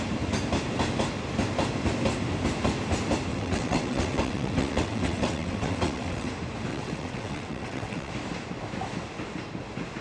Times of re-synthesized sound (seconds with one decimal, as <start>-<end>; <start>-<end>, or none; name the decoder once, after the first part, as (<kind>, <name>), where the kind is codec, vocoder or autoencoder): 3.3-6.3 (vocoder, WaveNeXt); 6.7-8.1